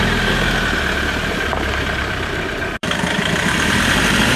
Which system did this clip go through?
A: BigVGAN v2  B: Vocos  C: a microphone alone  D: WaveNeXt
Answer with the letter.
A